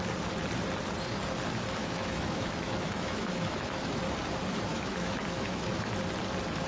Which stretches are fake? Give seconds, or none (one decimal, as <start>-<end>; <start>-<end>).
1.8-4.0; 4.7-5.8